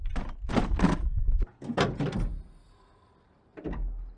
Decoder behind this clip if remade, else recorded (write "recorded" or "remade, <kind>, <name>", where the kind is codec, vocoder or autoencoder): recorded